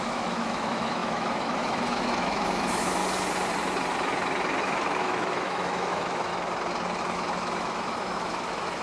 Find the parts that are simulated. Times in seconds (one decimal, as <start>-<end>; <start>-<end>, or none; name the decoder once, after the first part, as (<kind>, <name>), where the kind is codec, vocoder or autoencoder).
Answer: 0.0-3.0 (autoencoder, DAC-VAE); 4.6-6.3; 7.0-8.8